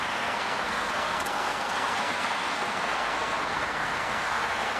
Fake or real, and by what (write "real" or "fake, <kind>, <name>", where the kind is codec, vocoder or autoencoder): fake, codec, SNAC